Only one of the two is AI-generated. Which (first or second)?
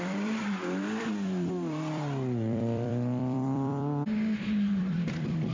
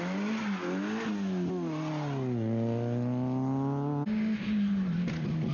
first